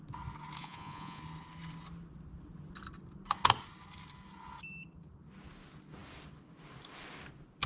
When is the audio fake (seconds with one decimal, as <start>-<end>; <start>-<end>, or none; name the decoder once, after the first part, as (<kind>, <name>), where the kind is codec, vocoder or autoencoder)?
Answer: 0.6-1.2 (vocoder, Vocos)